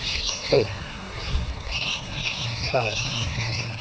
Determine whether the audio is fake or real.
fake